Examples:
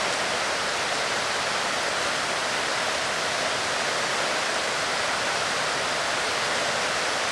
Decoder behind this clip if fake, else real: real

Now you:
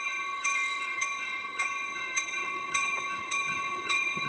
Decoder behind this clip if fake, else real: fake, vocoder, HiFi-GAN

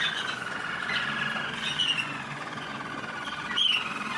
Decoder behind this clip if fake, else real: fake, vocoder, Vocos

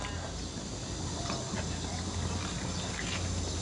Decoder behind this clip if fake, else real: real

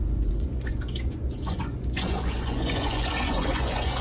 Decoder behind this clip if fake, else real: fake, vocoder, Vocos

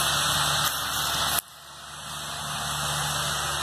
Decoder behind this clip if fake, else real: real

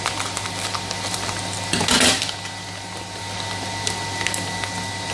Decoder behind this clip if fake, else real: real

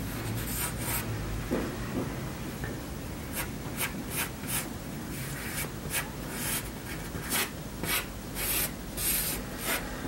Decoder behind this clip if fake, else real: real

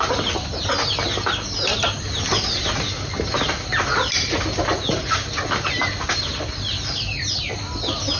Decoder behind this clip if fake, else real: real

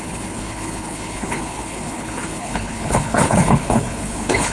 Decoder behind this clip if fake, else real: fake, codec, HILCodec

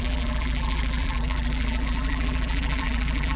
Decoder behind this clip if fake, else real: fake, vocoder, BigVGAN v2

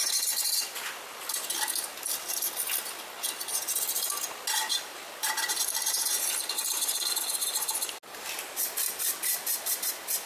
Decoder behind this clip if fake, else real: real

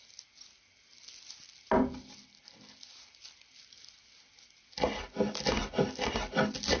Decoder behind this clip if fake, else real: real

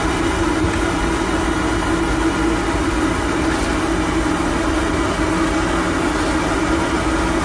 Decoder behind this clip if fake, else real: real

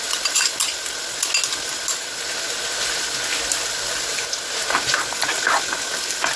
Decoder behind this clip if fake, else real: real